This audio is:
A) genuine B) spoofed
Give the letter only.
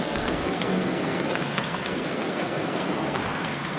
B